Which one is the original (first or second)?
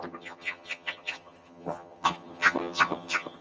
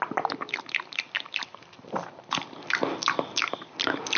second